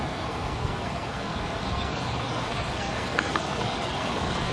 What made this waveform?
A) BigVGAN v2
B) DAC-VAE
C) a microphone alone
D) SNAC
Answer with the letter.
D